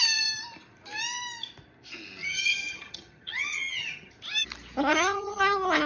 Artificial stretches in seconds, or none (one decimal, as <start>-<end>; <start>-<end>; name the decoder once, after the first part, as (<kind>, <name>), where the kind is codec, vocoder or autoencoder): 2.2-4.1 (vocoder, HiFi-GAN); 4.9-5.4